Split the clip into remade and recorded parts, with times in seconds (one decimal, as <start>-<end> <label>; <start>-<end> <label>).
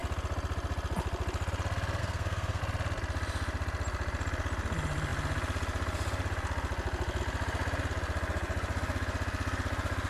0.0-2.0 recorded; 2.0-2.6 remade; 2.6-10.1 recorded